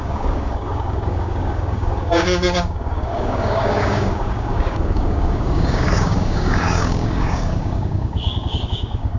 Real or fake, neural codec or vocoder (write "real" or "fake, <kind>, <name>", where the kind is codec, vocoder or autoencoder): fake, codec, DAC